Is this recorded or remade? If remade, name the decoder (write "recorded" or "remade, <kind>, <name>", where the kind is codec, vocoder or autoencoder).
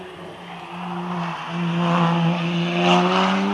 recorded